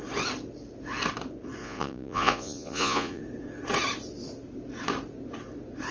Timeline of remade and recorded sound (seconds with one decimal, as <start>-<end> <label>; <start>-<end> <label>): 0.0-1.6 recorded; 1.6-3.2 remade; 3.2-5.9 recorded